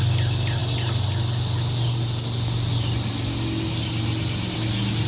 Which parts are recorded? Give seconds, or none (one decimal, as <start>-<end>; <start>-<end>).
0.0-5.1

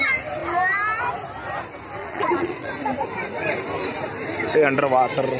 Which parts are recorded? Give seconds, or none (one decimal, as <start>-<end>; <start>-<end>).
0.0-2.0; 2.7-5.4

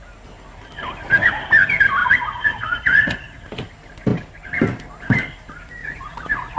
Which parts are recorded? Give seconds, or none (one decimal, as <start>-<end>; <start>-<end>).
0.0-2.0; 3.4-5.8